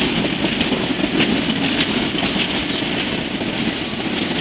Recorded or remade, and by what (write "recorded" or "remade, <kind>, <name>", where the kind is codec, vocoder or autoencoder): recorded